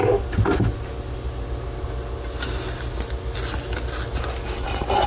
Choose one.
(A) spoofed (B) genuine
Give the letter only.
B